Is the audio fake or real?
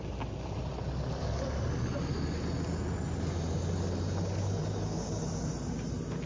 real